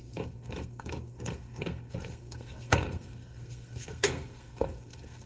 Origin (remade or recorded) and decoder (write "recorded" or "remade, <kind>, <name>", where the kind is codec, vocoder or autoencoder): remade, codec, SNAC